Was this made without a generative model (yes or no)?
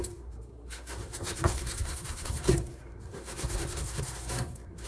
no